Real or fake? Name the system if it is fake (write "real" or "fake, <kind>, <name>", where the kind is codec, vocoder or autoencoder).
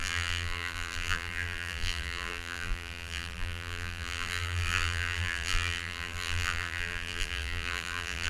fake, vocoder, BigVGAN v2